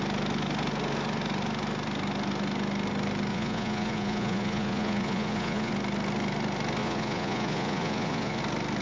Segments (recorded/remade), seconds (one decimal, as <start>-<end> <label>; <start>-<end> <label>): 0.0-3.3 recorded; 3.3-5.7 remade; 5.7-6.8 recorded; 6.8-8.4 remade; 8.4-8.8 recorded